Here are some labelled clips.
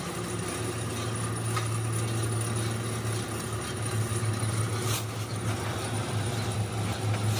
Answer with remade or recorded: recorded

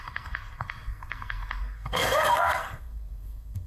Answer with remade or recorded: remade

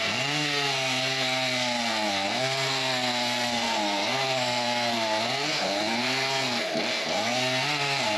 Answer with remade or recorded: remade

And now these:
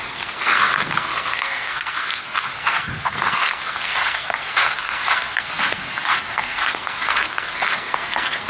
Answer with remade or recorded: remade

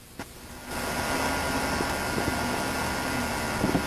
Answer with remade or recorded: recorded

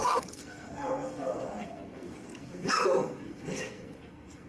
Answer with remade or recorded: remade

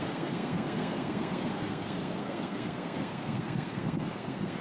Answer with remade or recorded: remade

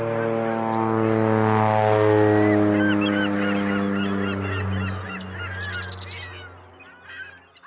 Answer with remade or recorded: recorded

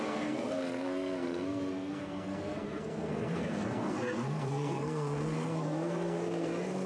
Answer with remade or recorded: remade